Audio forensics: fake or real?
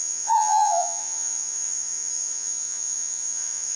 fake